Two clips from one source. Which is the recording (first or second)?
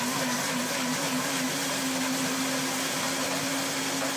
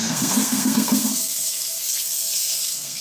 first